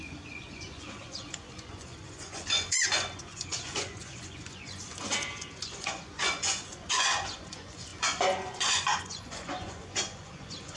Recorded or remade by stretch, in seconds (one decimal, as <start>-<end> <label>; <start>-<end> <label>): 0.0-10.8 remade

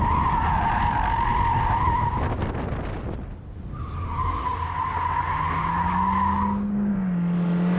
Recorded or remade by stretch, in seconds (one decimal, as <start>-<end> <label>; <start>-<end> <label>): 0.0-7.8 recorded